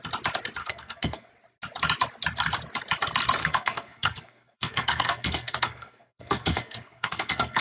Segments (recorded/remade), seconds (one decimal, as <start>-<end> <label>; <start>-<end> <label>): 0.0-0.6 recorded; 0.6-1.3 remade; 1.3-3.4 recorded; 3.4-7.6 remade